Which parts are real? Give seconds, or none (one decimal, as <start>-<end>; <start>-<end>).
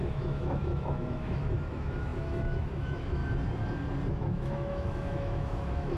3.2-4.1